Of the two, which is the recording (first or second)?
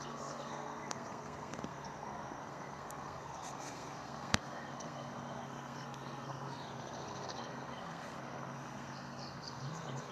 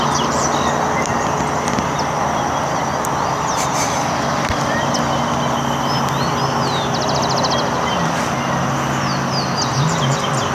second